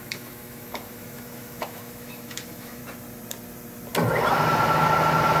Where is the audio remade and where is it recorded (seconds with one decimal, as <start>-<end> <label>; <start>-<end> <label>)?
0.0-2.8 remade; 2.8-5.4 recorded